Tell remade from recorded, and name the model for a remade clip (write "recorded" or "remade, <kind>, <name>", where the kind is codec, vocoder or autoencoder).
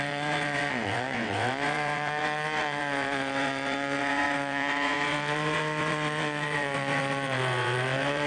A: remade, vocoder, WaveNeXt